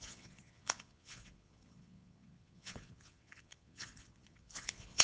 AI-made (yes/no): yes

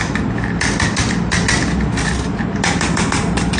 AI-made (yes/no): no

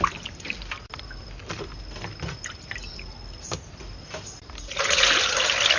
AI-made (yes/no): no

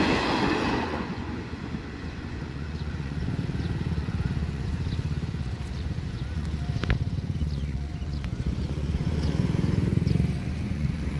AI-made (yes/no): yes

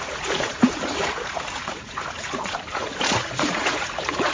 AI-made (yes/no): yes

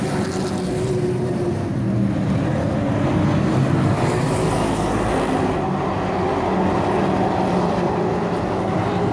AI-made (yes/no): no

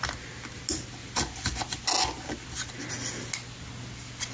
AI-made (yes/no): no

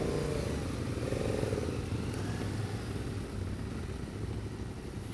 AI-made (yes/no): no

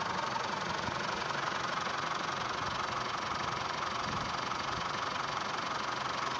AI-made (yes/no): yes